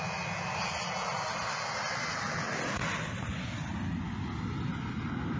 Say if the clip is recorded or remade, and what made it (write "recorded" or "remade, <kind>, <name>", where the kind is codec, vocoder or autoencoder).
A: recorded